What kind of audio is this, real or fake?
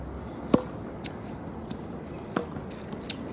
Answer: real